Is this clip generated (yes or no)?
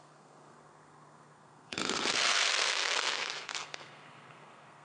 yes